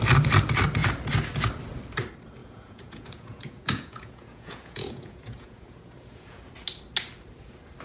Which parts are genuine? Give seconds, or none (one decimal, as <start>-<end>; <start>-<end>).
0.0-2.4; 6.4-7.8